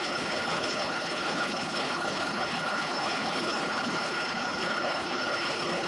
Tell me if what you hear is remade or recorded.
remade